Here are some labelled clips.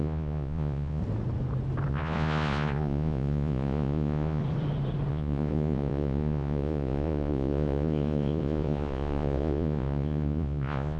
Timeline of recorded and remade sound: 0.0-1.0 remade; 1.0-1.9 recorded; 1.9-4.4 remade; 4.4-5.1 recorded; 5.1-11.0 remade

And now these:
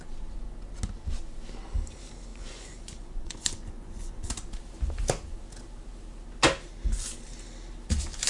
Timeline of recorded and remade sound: 0.0-2.3 recorded; 2.3-4.3 remade; 4.3-8.3 recorded

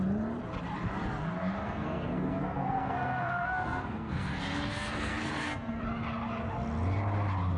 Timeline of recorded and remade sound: 0.0-1.6 recorded; 1.6-5.8 remade; 5.8-7.6 recorded

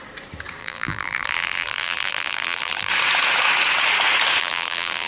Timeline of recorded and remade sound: 0.0-0.6 recorded; 0.6-2.9 remade; 2.9-4.4 recorded; 4.4-5.1 remade

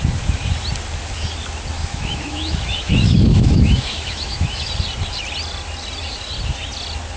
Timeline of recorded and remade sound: 0.0-1.8 recorded; 1.8-4.7 remade; 4.7-7.2 recorded

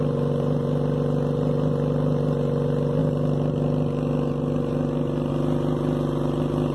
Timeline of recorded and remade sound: 0.0-6.7 recorded

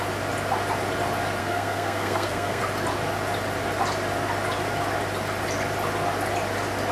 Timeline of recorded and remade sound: 0.0-1.4 recorded; 1.4-2.6 remade; 2.6-6.9 recorded